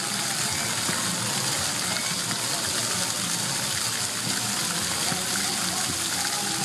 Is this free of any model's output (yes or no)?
yes